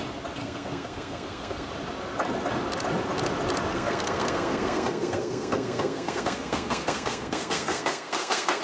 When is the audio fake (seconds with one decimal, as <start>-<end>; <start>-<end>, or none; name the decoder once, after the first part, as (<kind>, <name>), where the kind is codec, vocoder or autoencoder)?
0.4-1.7 (codec, SNAC); 3.7-8.6